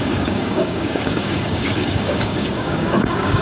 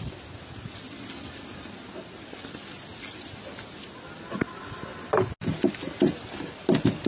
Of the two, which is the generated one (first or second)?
first